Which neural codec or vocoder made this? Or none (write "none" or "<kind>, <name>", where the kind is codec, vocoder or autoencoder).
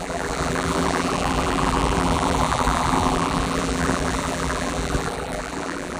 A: vocoder, BigVGAN v2